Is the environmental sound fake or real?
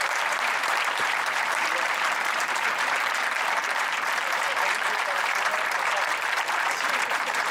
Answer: fake